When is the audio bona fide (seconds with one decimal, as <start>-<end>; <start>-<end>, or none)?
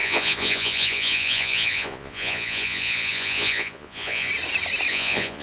4.3-4.9